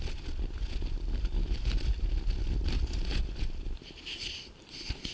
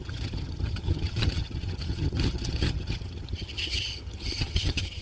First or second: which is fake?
second